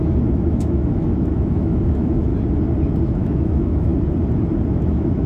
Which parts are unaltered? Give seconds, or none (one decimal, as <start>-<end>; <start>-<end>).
2.3-3.0; 3.9-4.7